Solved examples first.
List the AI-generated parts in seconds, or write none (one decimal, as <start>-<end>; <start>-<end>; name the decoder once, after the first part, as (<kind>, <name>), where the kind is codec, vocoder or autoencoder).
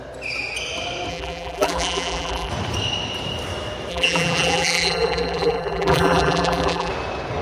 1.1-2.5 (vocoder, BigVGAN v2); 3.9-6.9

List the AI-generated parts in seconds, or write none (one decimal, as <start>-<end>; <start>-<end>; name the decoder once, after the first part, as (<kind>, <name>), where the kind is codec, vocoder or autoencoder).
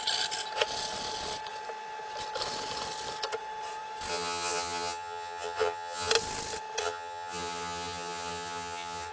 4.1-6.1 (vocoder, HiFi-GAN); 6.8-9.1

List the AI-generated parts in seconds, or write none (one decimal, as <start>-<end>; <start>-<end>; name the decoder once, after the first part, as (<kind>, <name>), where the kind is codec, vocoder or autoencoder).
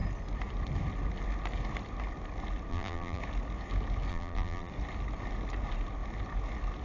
2.7-3.2 (vocoder, BigVGAN v2); 4.1-4.7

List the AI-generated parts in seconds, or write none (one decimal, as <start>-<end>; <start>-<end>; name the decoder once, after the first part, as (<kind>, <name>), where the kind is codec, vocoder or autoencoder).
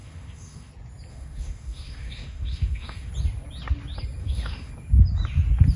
0.0-0.7 (autoencoder, DAC-VAE); 1.1-3.1; 4.2-4.7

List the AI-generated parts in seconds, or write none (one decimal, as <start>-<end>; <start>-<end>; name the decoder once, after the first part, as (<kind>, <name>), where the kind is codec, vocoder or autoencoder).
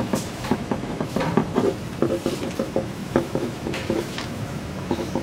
0.0-1.2 (autoencoder, DAC-VAE); 2.6-5.2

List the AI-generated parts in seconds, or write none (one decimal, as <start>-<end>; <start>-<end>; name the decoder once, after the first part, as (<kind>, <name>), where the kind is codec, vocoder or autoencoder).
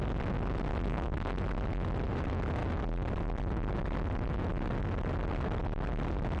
0.7-1.4 (codec, SNAC)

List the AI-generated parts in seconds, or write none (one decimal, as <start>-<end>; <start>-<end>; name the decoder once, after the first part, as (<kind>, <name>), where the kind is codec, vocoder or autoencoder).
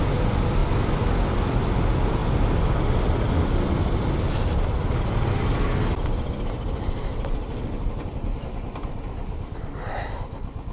none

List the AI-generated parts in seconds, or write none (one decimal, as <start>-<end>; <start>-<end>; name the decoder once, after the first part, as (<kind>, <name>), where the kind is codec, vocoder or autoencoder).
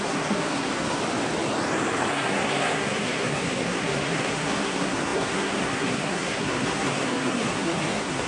0.0-1.0 (codec, SNAC); 2.1-8.3